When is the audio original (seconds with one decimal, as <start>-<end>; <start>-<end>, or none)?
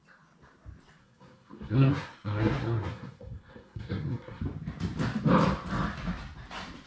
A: 0.0-1.0; 4.4-6.9